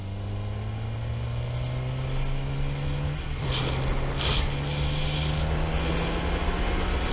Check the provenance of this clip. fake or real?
real